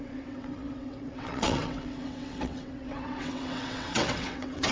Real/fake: fake